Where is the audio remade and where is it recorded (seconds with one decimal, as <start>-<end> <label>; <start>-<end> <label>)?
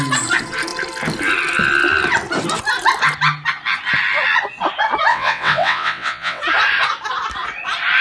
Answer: 0.0-5.1 recorded; 5.1-6.4 remade; 6.4-8.0 recorded